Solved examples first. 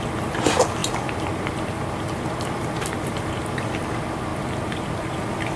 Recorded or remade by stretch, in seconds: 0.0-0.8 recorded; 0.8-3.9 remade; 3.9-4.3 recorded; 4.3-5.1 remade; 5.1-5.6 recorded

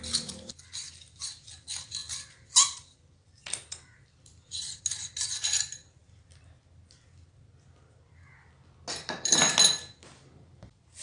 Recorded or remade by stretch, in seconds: 0.0-2.0 recorded; 2.0-4.8 remade; 4.8-11.0 recorded

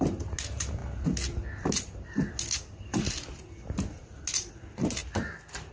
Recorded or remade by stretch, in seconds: 0.0-5.7 recorded

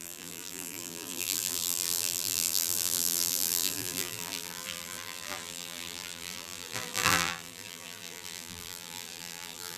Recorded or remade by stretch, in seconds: 0.0-9.8 remade

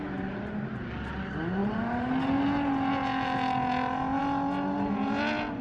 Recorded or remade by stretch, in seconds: 0.0-1.6 recorded; 1.6-2.1 remade; 2.1-5.6 recorded

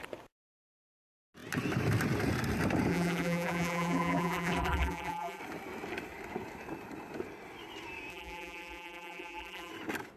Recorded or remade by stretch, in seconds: 0.0-2.9 recorded; 2.9-5.4 remade; 5.4-8.1 recorded; 8.1-9.7 remade; 9.7-10.2 recorded

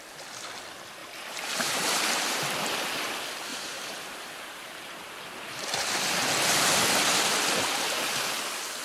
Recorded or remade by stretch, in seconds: 0.0-1.0 recorded; 1.0-2.4 remade; 2.4-3.5 recorded; 3.5-6.0 remade; 6.0-8.8 recorded

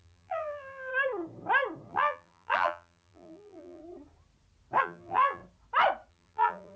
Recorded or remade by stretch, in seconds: 0.0-0.9 remade; 0.9-1.9 recorded; 1.9-3.8 remade; 3.8-4.8 recorded; 4.8-5.4 remade; 5.4-6.1 recorded; 6.1-6.8 remade